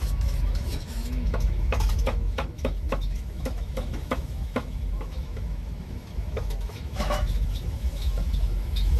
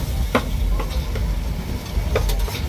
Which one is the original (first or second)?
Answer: second